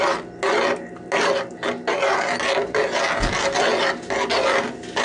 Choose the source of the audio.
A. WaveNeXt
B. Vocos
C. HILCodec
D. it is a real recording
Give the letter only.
D